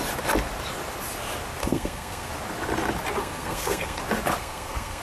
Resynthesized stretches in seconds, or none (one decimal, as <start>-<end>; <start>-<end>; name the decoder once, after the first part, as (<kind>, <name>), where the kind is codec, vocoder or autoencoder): 1.6-2.3 (codec, SNAC); 3.2-4.0; 4.4-5.0